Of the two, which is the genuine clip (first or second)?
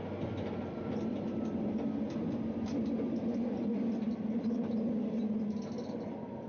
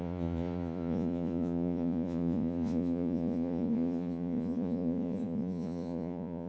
first